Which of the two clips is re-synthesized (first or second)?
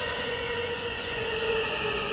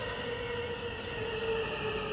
first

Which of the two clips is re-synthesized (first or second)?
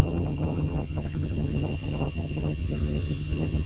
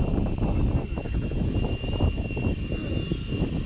first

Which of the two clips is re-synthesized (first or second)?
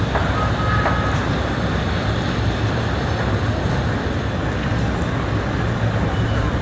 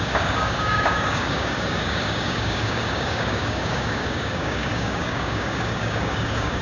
second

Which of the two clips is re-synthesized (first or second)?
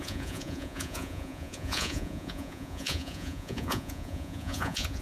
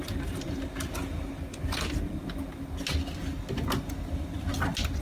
first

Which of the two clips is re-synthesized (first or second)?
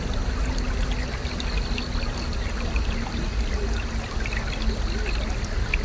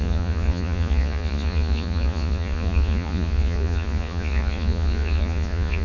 second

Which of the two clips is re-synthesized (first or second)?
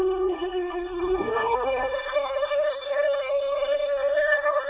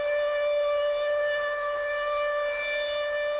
first